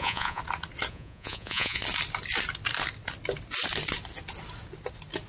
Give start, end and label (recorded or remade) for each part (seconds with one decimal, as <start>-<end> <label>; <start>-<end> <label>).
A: 0.0-0.4 remade; 0.4-0.9 recorded; 0.9-1.8 remade; 1.8-5.3 recorded